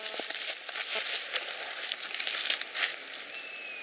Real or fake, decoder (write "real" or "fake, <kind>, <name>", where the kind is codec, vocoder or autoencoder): real